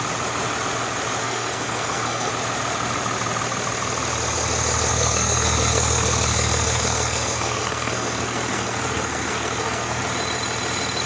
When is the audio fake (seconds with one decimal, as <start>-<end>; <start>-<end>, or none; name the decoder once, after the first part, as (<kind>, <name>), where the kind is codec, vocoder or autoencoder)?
1.2-2.3 (codec, SNAC); 4.9-10.0